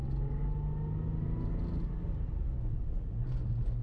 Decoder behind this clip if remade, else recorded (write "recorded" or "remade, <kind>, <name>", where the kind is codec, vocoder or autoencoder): recorded